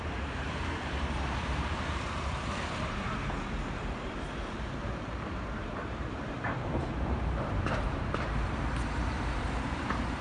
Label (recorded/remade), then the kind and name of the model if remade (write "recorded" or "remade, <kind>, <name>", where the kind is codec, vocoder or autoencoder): remade, vocoder, BigVGAN v2